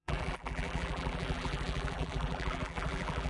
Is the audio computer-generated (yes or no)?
yes